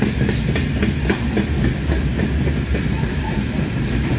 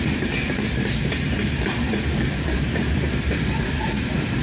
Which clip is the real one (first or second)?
first